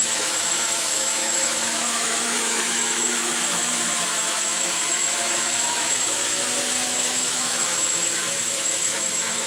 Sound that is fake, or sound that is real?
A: fake